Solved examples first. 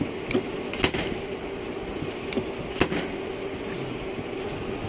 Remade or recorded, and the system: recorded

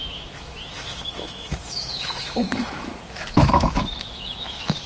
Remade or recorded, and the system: remade, autoencoder, DAC-VAE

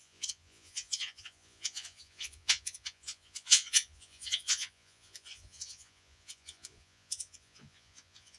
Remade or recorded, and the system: remade, vocoder, Vocos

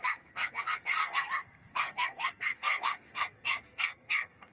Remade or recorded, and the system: remade, codec, SNAC